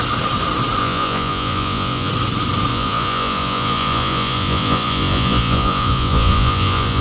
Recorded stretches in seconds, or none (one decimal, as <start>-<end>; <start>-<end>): 0.0-0.8; 2.1-2.7